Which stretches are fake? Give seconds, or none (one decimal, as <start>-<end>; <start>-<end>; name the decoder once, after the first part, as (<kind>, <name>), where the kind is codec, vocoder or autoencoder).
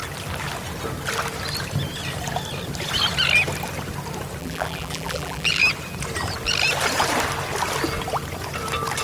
4.4-5.6 (vocoder, BigVGAN v2)